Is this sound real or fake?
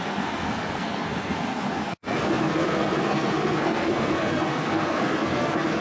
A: fake